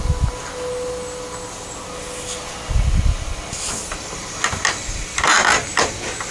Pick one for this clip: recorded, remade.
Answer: recorded